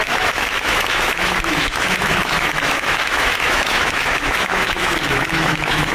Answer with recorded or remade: remade